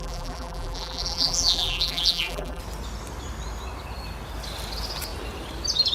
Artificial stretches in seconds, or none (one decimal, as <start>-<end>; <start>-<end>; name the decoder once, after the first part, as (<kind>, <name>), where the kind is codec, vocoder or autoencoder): 0.0-2.6 (vocoder, BigVGAN v2)